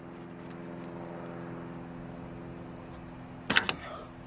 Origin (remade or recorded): recorded